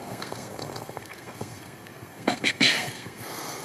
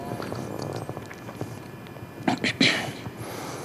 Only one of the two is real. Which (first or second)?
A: second